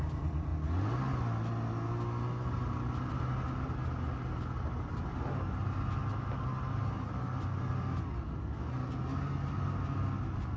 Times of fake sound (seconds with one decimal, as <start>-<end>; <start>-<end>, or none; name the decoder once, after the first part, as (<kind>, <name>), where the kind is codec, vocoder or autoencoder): none